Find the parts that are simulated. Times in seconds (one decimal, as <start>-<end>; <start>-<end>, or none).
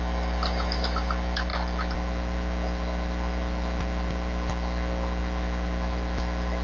none